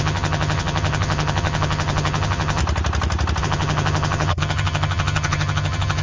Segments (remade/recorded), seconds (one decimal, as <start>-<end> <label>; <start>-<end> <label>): 0.0-2.6 remade; 2.6-3.4 recorded; 3.4-6.0 remade

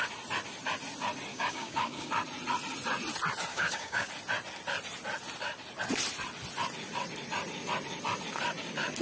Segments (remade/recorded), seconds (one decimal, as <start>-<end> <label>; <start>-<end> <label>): 0.0-1.3 recorded; 1.3-2.1 remade; 2.1-3.5 recorded; 3.5-4.1 remade; 4.1-9.0 recorded

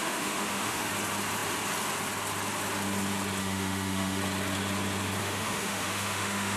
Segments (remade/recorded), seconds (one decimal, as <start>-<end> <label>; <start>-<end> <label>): 0.0-0.9 remade; 0.9-3.4 recorded; 3.4-4.2 remade; 4.2-5.2 recorded; 5.2-6.6 remade